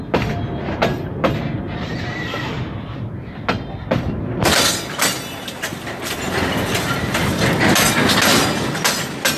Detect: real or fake real